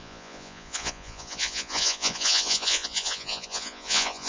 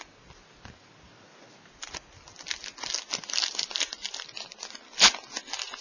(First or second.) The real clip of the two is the second